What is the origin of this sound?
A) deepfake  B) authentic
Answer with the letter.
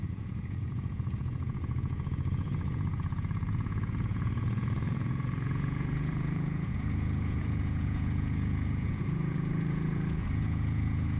A